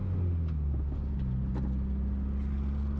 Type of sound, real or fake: real